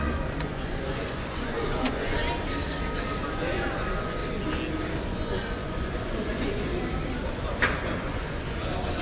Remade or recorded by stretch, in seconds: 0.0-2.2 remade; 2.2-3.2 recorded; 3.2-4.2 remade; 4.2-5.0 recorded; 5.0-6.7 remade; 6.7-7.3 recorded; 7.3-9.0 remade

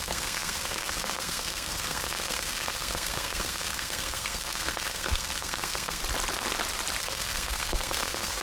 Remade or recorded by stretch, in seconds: 0.0-6.0 remade; 6.0-7.0 recorded; 7.0-8.4 remade

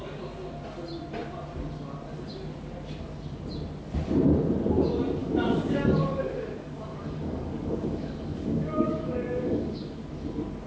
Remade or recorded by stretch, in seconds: 0.0-5.2 recorded; 5.2-10.0 remade; 10.0-10.7 recorded

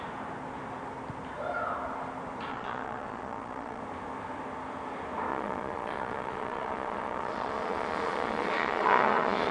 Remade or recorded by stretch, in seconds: 0.0-2.5 recorded; 2.5-3.8 remade; 3.8-5.3 recorded; 5.3-9.5 remade

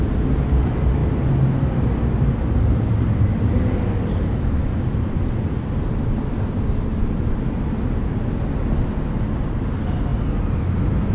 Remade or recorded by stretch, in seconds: 0.0-11.1 recorded

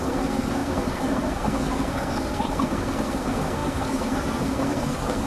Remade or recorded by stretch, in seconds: 0.0-5.3 remade

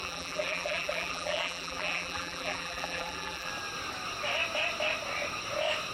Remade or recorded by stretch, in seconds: 0.0-3.5 remade; 3.5-5.9 recorded